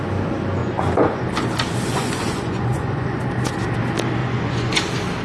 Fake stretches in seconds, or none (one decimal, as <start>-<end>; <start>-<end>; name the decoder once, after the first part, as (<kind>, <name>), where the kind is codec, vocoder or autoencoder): 0.6-1.2 (vocoder, Vocos); 1.9-3.2; 4.2-4.8